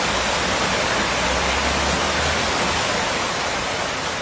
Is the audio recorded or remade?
recorded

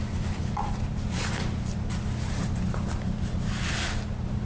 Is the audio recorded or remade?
recorded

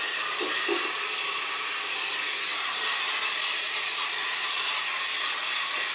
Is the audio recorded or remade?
recorded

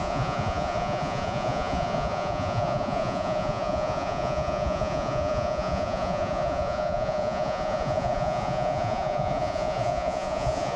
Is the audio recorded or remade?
remade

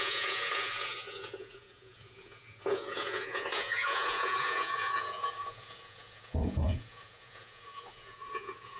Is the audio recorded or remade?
remade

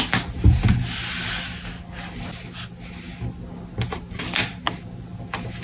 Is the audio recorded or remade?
recorded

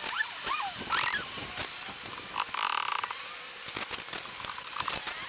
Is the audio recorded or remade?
recorded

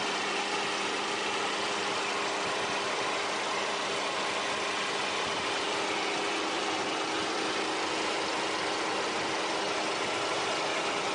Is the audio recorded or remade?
recorded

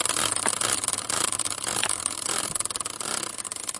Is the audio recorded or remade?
recorded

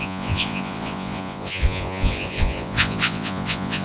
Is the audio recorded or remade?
remade